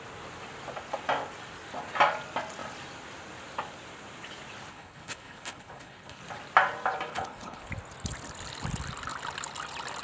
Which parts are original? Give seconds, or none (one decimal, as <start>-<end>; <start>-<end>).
0.0-4.7; 6.2-7.1; 7.7-10.0